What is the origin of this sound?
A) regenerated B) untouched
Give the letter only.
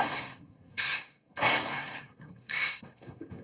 A